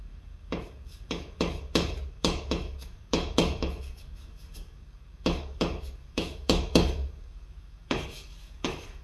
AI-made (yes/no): yes